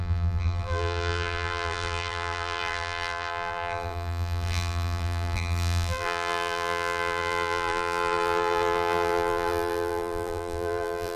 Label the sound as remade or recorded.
remade